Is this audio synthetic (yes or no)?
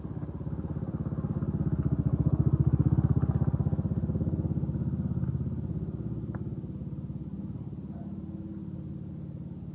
no